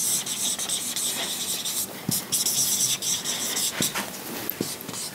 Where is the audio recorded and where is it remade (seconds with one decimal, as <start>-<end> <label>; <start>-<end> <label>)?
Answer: 0.0-5.1 recorded